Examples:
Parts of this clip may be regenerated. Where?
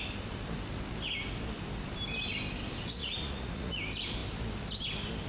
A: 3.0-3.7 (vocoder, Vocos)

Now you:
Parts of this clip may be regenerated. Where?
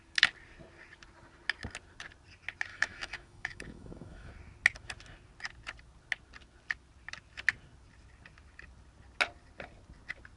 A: 2.7-4.3 (autoencoder, DAC-VAE)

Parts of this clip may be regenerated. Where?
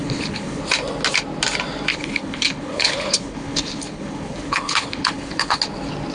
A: 0.0-0.6 (codec, HILCodec); 1.9-5.6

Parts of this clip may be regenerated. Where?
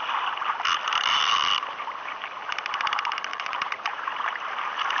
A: 3.3-4.0 (vocoder, Vocos)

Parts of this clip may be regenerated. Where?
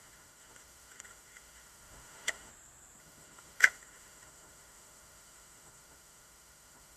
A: 0.0-2.5 (autoencoder, DAC-VAE); 3.0-7.0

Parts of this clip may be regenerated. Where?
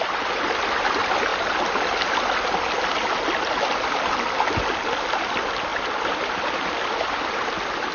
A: none